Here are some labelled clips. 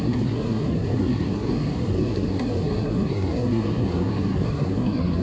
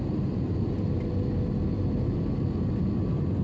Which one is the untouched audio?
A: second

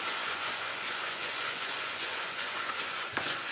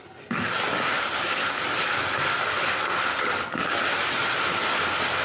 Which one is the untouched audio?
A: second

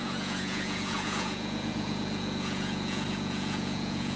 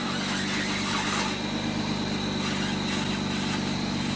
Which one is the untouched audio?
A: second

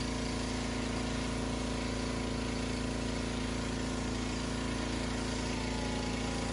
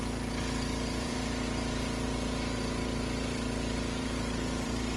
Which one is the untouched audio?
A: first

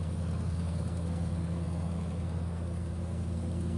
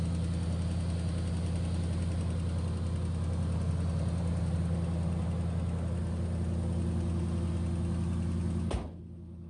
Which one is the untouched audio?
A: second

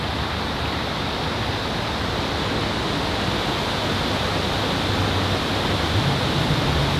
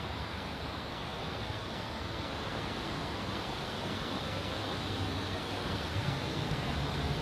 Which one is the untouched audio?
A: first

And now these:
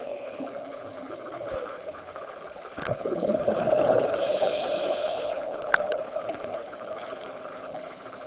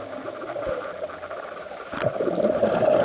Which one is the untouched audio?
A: second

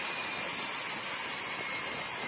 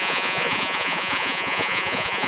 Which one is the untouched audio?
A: first